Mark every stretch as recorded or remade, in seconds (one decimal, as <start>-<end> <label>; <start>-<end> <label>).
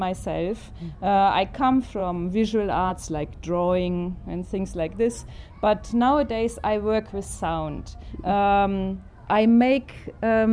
0.0-10.5 recorded